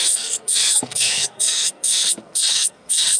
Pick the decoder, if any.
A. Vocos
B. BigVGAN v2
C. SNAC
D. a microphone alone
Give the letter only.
C